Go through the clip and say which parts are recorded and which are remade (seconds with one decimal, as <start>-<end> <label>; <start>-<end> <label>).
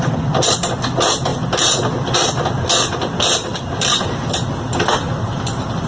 0.0-5.9 recorded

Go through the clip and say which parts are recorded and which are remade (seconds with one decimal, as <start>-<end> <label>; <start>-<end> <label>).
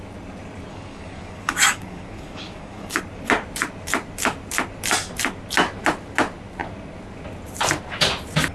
0.0-0.7 recorded; 0.7-3.0 remade; 3.0-8.5 recorded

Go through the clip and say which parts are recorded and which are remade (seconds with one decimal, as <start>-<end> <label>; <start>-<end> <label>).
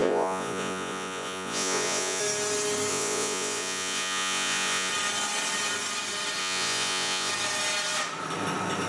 0.0-2.2 remade; 2.2-2.9 recorded; 2.9-4.9 remade; 4.9-6.4 recorded; 6.4-7.3 remade; 7.3-8.9 recorded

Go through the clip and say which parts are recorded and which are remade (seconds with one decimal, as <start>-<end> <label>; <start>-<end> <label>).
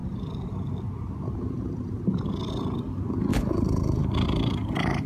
0.0-3.3 recorded; 3.3-5.1 remade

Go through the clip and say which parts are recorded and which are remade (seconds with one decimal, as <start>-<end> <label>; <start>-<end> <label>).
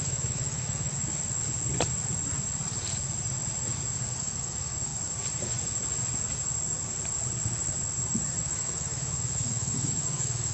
0.0-0.9 remade; 0.9-4.2 recorded; 4.2-4.9 remade; 4.9-8.4 recorded; 8.4-10.5 remade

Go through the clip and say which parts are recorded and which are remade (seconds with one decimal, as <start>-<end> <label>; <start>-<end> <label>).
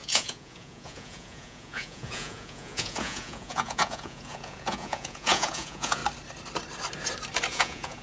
0.0-6.0 remade; 6.0-7.5 recorded; 7.5-8.0 remade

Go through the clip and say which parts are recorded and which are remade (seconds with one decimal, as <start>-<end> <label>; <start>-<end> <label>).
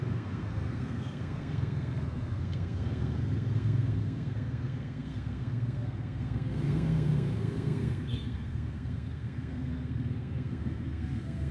0.0-11.5 remade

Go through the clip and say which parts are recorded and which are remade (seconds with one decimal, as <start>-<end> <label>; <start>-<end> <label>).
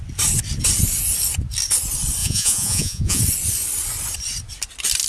0.0-2.2 recorded; 2.2-3.2 remade; 3.2-5.1 recorded